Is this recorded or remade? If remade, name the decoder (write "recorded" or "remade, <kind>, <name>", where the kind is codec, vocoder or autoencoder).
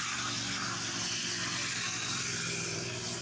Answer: recorded